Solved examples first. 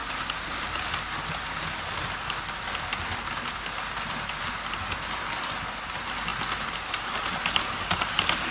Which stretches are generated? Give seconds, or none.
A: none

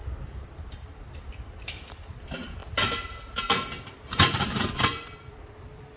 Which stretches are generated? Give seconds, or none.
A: 0.0-2.6; 4.4-6.0

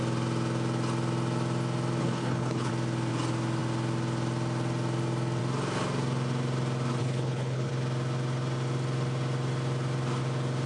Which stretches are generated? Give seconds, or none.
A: 2.0-2.7; 7.0-7.7

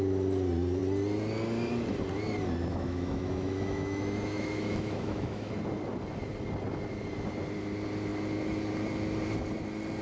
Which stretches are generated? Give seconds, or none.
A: 2.7-5.5

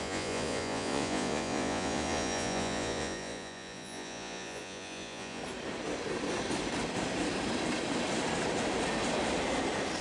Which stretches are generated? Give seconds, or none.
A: 0.0-5.4

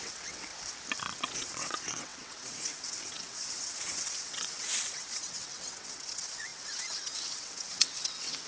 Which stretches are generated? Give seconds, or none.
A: 0.0-0.5; 1.0-8.5